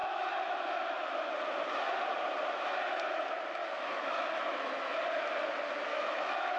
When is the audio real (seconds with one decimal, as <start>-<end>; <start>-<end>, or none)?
1.3-3.6; 5.0-5.9